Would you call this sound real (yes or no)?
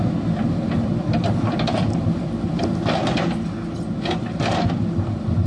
yes